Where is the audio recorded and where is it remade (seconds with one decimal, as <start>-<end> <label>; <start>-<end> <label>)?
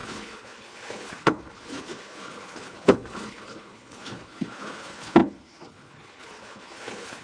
0.0-7.2 remade